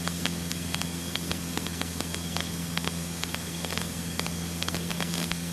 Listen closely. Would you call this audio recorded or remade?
remade